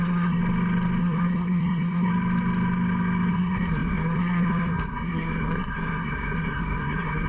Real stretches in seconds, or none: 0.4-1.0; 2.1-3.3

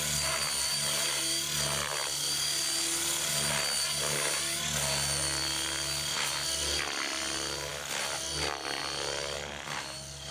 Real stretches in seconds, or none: 0.0-10.3

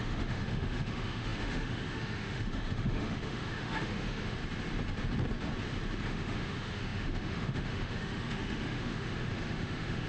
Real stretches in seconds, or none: 4.4-6.1

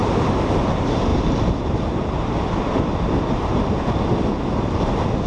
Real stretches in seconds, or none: none